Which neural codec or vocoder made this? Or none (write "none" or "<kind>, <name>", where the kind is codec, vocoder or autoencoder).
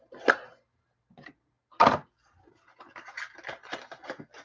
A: none